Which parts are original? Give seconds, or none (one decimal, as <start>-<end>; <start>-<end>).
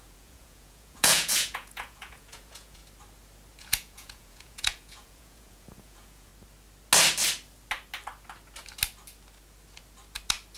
2.8-3.6; 6.3-10.6